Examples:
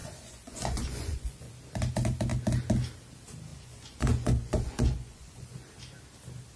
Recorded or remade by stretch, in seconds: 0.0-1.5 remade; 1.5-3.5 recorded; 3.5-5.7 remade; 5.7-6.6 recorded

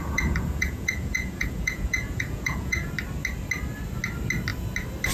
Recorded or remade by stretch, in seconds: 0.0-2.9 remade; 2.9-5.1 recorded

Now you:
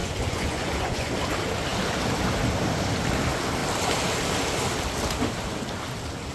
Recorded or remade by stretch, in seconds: 0.0-1.1 remade; 1.1-6.3 recorded

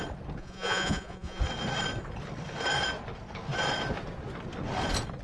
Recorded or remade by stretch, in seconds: 0.0-0.4 recorded; 0.4-1.4 remade; 1.4-5.2 recorded

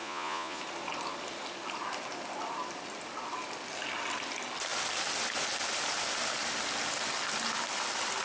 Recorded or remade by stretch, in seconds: 0.0-0.6 remade; 0.6-8.2 recorded

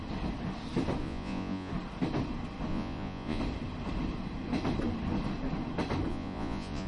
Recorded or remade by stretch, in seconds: 0.0-1.0 recorded; 1.0-1.7 remade; 1.7-2.7 recorded; 2.7-3.4 remade; 3.4-6.1 recorded; 6.1-6.9 remade

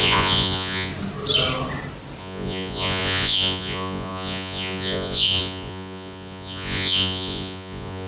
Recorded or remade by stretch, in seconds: 0.0-0.9 remade; 0.9-2.2 recorded; 2.2-8.1 remade

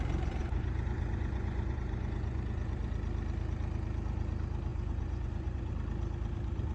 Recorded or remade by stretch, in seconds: 0.0-0.4 recorded; 0.4-2.9 remade; 2.9-4.7 recorded; 4.7-5.7 remade; 5.7-6.7 recorded